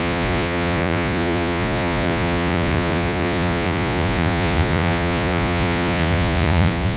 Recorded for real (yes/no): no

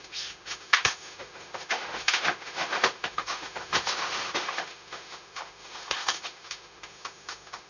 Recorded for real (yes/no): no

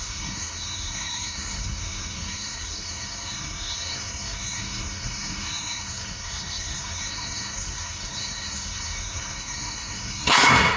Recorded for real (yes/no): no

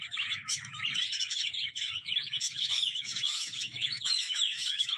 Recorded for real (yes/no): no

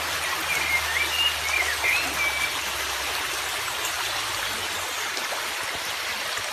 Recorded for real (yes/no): yes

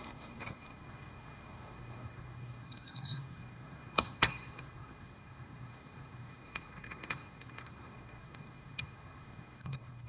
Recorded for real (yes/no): no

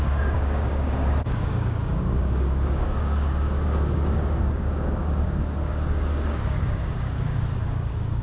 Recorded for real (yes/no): no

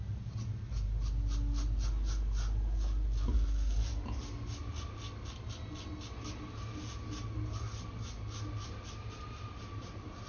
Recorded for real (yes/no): yes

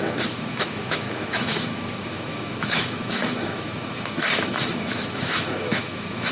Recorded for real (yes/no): no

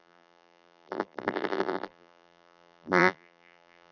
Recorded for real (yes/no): no